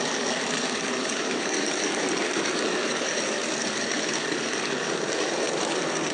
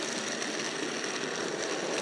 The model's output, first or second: first